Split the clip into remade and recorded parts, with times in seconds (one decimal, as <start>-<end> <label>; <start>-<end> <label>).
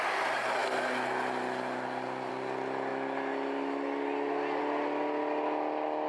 0.0-6.1 recorded